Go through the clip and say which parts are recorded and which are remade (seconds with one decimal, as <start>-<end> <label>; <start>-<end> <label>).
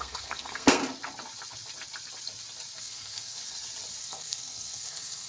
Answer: 0.0-0.8 remade; 0.8-2.8 recorded; 2.8-3.4 remade; 3.4-4.0 recorded; 4.0-5.3 remade